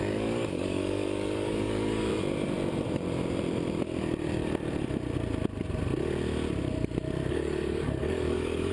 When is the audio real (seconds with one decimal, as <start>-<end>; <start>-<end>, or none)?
2.1-7.3